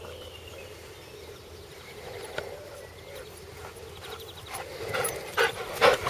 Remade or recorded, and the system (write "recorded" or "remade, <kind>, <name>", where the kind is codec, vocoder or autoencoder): recorded